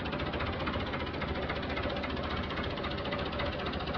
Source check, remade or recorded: recorded